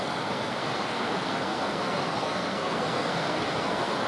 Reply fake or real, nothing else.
fake